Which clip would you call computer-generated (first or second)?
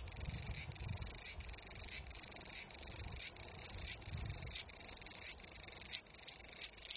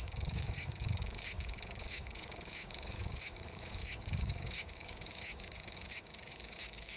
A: second